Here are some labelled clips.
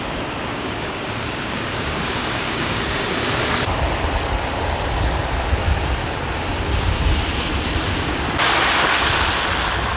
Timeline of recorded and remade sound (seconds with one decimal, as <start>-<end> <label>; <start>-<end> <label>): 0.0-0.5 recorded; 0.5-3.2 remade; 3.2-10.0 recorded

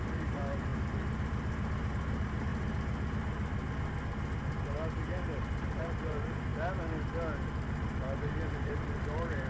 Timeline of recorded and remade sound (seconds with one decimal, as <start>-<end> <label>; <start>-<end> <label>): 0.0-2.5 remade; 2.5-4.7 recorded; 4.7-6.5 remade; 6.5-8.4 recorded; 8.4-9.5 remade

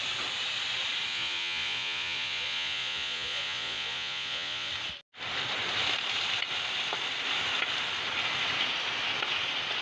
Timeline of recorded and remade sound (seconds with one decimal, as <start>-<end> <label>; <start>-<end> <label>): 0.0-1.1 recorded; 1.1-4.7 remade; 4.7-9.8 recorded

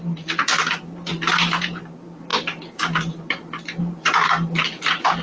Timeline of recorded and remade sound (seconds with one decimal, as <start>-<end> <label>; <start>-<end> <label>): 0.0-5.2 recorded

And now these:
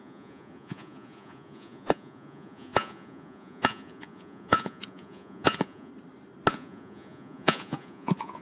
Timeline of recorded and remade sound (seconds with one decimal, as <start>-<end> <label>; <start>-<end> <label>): 0.0-5.9 remade; 5.9-6.5 recorded; 6.5-8.4 remade

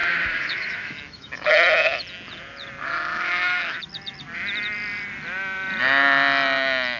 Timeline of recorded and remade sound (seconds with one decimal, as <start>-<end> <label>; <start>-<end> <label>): 0.0-1.5 remade; 1.5-3.1 recorded; 3.1-3.8 remade; 3.8-7.0 recorded